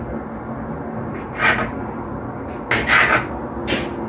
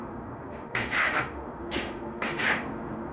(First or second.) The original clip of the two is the first